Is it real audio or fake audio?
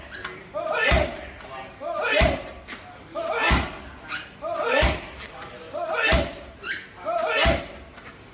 real